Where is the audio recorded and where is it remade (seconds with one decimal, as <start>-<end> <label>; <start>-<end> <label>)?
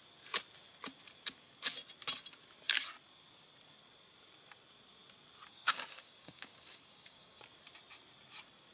0.0-5.5 recorded; 5.5-7.4 remade; 7.4-8.7 recorded